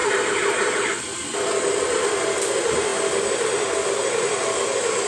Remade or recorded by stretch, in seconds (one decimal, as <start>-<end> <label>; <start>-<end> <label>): 0.0-5.1 recorded